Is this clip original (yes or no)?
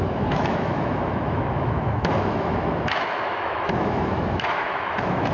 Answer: no